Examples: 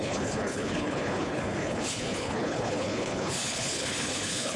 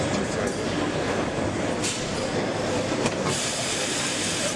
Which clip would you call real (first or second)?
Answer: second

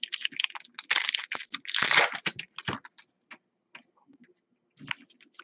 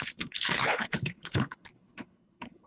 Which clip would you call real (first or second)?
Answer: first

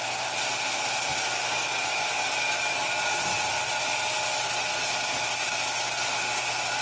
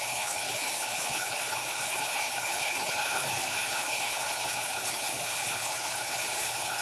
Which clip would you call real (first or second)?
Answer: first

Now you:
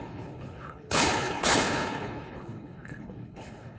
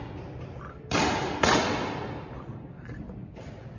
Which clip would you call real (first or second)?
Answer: second